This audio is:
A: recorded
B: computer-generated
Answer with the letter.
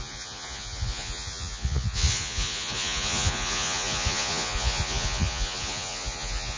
B